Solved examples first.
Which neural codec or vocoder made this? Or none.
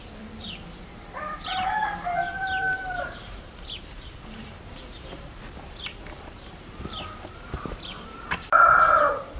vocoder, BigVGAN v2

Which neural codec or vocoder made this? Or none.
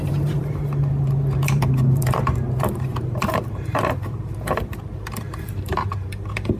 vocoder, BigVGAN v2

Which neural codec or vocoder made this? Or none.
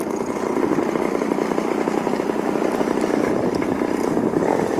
vocoder, BigVGAN v2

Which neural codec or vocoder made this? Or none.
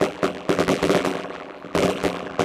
vocoder, BigVGAN v2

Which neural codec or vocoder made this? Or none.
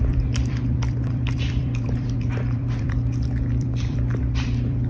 vocoder, BigVGAN v2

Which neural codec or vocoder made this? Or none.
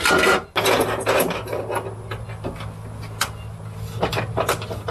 none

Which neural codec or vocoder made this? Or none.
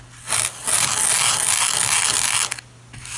none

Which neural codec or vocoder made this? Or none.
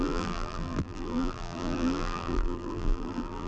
vocoder, BigVGAN v2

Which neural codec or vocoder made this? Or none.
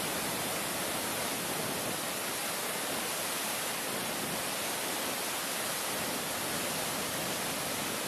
none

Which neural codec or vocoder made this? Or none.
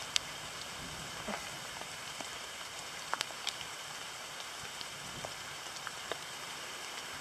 vocoder, BigVGAN v2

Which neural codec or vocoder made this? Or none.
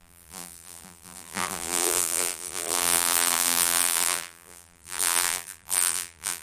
vocoder, BigVGAN v2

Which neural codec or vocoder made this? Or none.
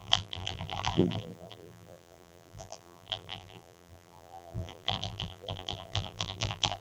vocoder, BigVGAN v2